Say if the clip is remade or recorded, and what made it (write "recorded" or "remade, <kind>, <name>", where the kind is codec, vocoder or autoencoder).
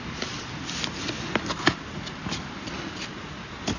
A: recorded